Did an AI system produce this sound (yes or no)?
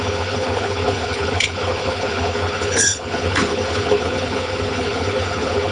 yes